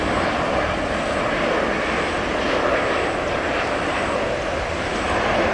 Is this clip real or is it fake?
real